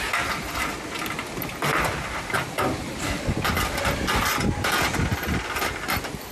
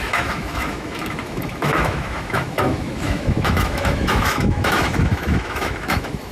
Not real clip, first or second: second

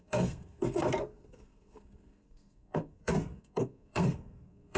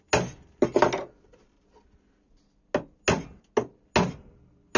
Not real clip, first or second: first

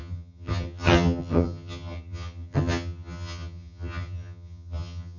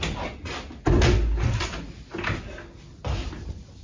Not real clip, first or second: first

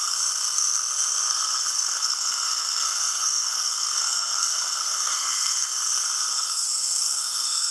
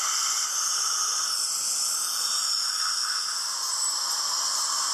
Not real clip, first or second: first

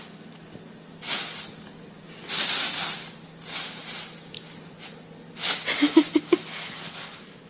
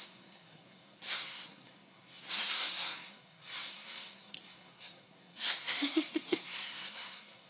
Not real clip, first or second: second